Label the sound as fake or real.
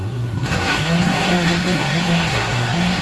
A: fake